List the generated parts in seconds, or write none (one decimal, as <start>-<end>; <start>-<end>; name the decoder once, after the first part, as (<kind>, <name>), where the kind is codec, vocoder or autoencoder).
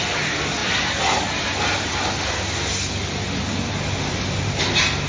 none